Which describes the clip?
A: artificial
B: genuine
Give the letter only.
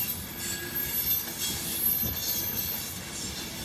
B